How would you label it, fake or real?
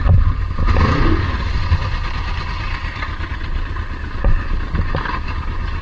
real